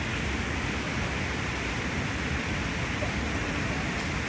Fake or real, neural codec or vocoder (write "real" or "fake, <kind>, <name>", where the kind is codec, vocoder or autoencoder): real